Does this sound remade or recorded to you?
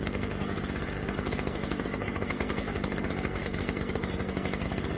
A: remade